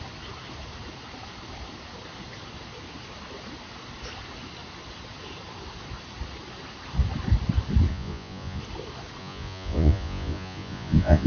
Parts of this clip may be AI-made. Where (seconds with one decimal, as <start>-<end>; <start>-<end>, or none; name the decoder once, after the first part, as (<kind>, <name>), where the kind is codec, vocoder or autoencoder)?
7.9-8.6 (vocoder, Vocos); 9.2-11.3